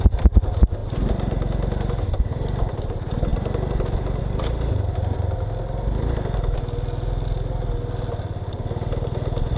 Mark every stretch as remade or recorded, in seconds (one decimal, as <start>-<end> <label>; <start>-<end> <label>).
0.0-3.3 recorded; 3.3-4.2 remade; 4.2-9.6 recorded